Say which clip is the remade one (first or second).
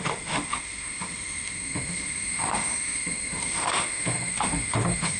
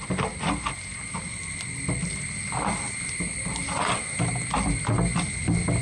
first